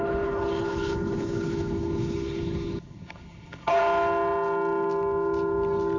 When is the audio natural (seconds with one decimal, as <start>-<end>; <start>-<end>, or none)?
3.8-6.0